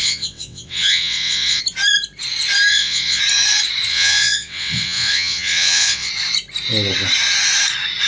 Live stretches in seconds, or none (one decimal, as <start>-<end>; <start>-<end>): 1.6-2.7; 3.2-3.9; 6.1-8.1